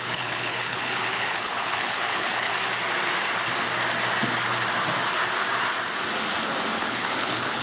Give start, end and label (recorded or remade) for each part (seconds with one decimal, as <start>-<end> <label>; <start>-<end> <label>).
0.0-2.5 remade; 2.5-6.8 recorded; 6.8-7.6 remade